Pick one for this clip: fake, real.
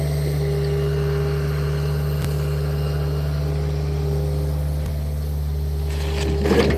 real